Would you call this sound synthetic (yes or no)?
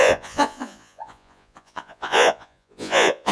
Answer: yes